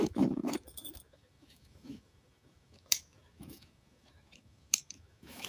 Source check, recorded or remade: remade